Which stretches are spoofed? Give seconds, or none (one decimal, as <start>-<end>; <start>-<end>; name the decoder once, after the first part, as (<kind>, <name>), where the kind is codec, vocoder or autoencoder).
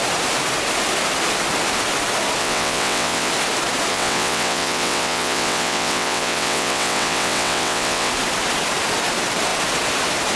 2.4-3.3 (vocoder, WaveNeXt); 3.9-8.1